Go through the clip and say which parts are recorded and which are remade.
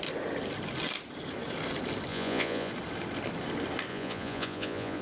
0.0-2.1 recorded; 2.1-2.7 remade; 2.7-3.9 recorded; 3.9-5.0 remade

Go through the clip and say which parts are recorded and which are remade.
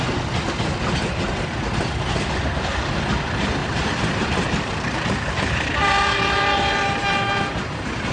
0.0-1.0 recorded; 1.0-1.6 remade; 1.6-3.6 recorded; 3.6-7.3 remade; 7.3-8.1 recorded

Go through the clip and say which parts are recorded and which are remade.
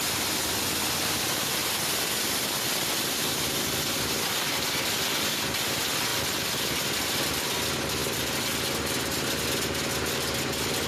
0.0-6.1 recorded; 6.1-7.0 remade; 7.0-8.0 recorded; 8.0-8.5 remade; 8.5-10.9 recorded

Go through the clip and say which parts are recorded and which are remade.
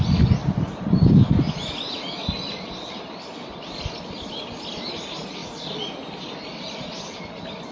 0.0-7.7 recorded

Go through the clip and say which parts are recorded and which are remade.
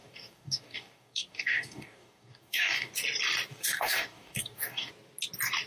0.0-2.9 remade; 2.9-3.5 recorded; 3.5-4.9 remade; 4.9-5.7 recorded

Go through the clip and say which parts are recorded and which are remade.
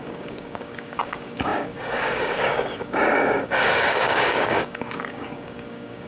0.0-6.1 remade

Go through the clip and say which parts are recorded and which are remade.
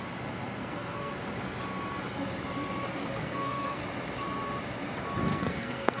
0.0-0.6 recorded; 0.6-1.1 remade; 1.1-3.2 recorded; 3.2-3.8 remade; 3.8-5.3 recorded; 5.3-6.0 remade